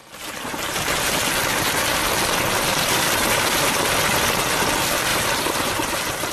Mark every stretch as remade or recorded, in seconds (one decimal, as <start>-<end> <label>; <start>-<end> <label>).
0.0-2.7 recorded; 2.7-4.4 remade; 4.4-5.1 recorded; 5.1-6.3 remade